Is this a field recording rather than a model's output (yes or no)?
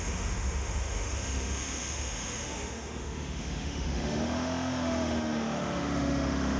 no